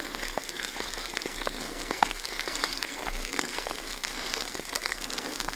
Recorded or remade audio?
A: remade